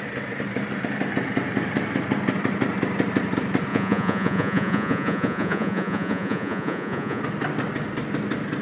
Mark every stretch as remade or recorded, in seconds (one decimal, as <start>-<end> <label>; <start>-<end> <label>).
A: 0.0-3.7 recorded; 3.7-7.2 remade; 7.2-8.6 recorded